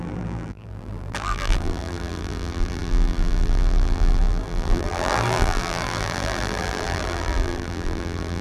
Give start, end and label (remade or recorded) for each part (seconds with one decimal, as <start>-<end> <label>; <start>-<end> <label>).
0.0-8.4 remade